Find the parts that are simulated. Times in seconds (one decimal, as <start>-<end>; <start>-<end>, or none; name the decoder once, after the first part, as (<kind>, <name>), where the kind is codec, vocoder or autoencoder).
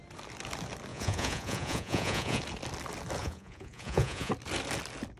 0.9-2.4 (vocoder, Vocos); 3.2-4.3